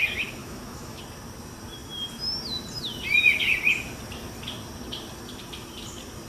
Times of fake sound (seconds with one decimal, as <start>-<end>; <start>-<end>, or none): 0.4-1.0